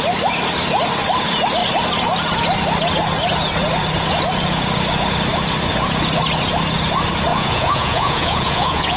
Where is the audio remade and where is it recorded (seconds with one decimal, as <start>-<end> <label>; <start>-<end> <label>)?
0.0-7.3 recorded; 7.3-9.0 remade

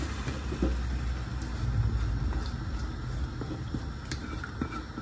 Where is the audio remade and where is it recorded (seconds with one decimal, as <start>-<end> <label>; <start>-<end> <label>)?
0.0-5.0 recorded

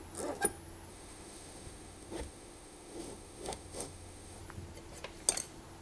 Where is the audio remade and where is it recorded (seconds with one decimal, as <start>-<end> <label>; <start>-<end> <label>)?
0.0-0.9 recorded; 0.9-4.4 remade; 4.4-5.8 recorded